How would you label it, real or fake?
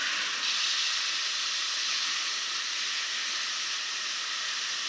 real